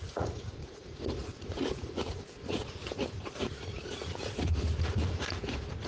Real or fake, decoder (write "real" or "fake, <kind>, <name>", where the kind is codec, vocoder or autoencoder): fake, vocoder, Vocos